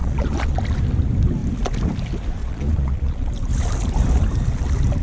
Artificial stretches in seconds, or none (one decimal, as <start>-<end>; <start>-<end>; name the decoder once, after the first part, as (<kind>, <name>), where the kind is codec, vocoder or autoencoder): 0.0-0.6 (vocoder, Vocos); 2.4-3.3